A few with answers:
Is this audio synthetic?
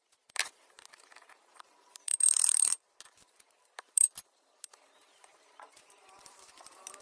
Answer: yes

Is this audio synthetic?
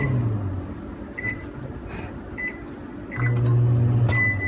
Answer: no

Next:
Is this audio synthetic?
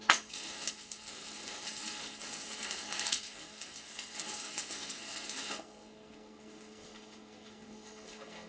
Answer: yes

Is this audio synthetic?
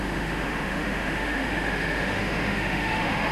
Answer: yes